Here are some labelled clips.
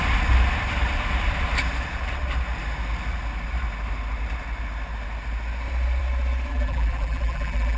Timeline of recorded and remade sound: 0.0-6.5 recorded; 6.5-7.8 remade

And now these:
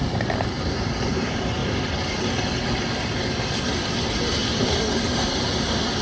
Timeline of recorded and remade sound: 0.0-1.6 remade; 1.6-3.8 recorded; 3.8-6.0 remade

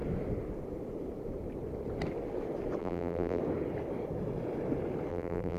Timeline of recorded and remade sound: 0.0-2.8 recorded; 2.8-3.4 remade; 3.4-5.1 recorded; 5.1-5.6 remade